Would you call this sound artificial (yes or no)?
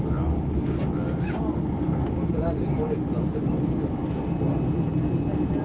no